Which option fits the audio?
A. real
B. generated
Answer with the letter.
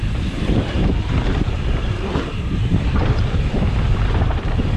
B